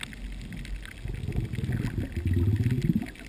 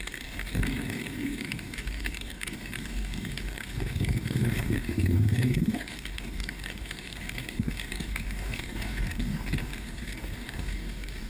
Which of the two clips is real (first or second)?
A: first